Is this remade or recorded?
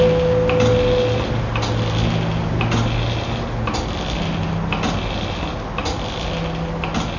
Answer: recorded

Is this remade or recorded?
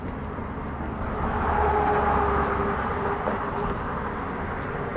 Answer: recorded